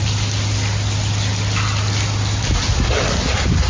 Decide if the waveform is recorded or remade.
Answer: recorded